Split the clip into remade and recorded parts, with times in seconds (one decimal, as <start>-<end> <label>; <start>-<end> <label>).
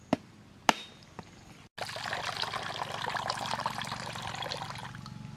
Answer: 0.0-5.4 recorded